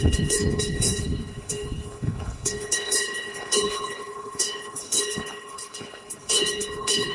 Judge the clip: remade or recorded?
remade